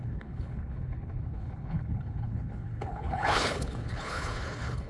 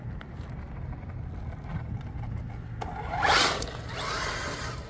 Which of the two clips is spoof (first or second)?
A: first